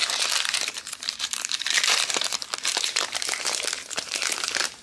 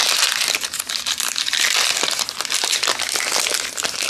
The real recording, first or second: second